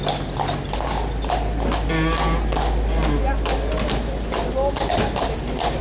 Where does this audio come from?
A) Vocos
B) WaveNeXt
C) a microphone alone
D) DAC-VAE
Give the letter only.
C